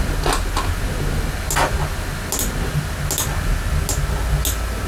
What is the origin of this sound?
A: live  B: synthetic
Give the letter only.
A